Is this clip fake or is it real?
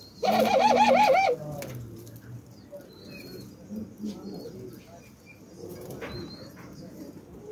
real